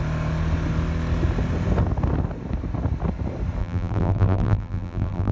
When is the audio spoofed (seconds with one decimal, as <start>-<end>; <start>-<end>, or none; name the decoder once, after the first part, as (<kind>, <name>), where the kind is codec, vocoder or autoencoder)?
3.6-5.3 (vocoder, BigVGAN v2)